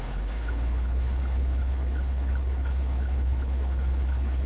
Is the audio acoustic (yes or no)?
no